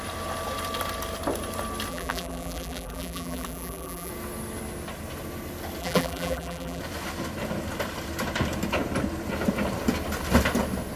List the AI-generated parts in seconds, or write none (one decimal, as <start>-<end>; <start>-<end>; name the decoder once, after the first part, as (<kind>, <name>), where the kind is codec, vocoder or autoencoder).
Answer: 1.9-4.1 (vocoder, BigVGAN v2); 5.8-6.8